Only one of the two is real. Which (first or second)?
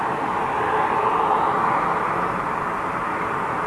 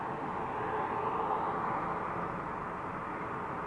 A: second